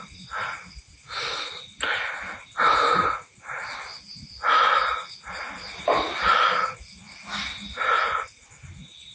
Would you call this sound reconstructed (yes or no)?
no